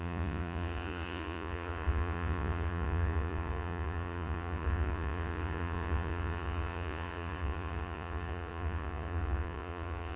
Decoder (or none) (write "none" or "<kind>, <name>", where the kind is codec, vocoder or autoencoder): vocoder, Vocos